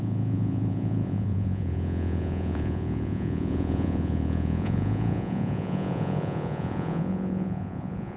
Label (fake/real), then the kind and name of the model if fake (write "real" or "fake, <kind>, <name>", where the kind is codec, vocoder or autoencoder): fake, vocoder, Vocos